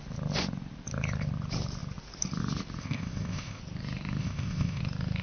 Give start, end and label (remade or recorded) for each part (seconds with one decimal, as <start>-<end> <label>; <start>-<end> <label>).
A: 0.0-2.8 recorded; 2.8-3.6 remade; 3.6-4.2 recorded; 4.2-4.8 remade; 4.8-5.2 recorded